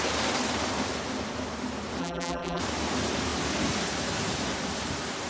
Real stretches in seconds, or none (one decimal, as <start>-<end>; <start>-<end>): 0.0-2.0; 2.6-5.3